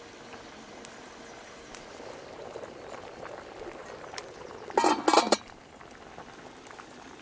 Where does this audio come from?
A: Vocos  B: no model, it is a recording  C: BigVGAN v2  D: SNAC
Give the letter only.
B